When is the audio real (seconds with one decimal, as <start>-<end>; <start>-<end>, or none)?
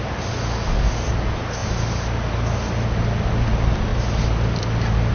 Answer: 0.0-5.1